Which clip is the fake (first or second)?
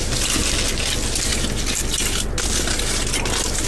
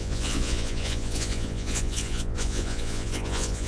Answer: second